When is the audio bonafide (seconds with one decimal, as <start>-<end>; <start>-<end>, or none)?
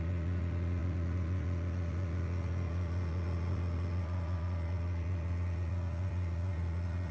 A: none